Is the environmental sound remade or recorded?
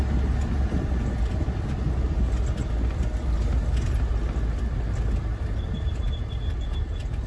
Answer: recorded